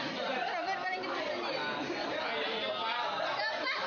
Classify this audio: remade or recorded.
recorded